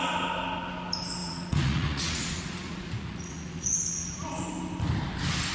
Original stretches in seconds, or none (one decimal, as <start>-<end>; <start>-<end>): 0.0-1.2; 4.4-5.5